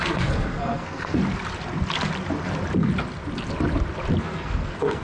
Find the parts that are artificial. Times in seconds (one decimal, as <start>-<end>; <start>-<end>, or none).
0.0-1.2; 4.2-5.0